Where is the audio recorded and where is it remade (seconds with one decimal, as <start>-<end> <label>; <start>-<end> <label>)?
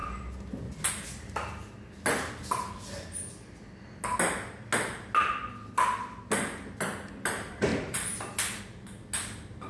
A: 0.0-9.7 recorded